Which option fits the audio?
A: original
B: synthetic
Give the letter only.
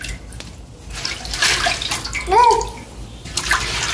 A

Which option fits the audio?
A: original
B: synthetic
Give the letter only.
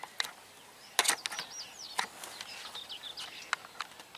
A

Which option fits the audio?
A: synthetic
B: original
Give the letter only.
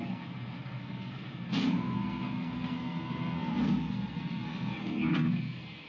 A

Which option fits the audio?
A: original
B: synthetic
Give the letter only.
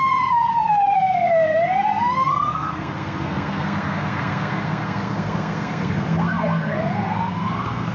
B